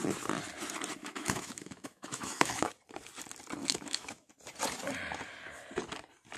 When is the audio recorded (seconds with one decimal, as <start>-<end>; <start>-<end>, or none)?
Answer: 0.0-1.0; 2.7-3.6; 4.3-6.4